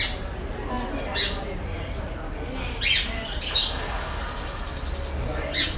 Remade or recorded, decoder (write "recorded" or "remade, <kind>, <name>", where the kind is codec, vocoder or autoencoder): recorded